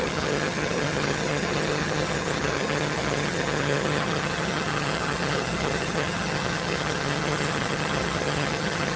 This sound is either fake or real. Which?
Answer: fake